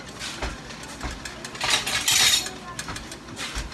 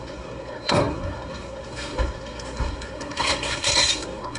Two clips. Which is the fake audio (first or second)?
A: second